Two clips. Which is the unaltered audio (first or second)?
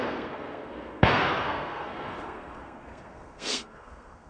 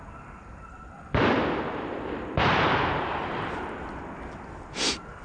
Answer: second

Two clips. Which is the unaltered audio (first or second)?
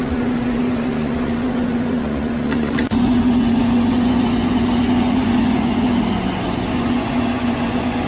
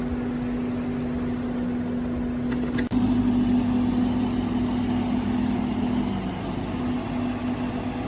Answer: second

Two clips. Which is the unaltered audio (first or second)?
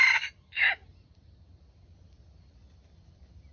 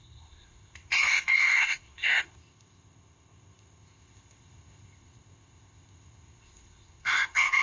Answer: first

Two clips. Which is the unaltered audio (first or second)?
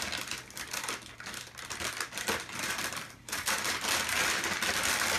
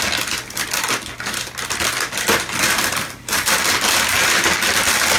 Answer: second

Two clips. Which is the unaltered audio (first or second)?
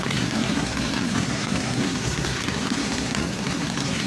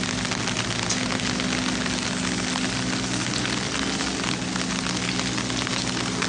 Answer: second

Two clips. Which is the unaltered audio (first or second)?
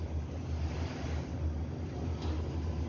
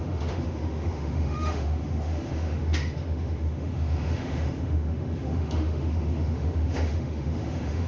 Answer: first